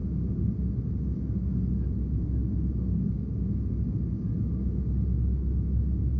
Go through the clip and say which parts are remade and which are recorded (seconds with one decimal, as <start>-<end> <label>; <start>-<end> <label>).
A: 0.0-6.2 recorded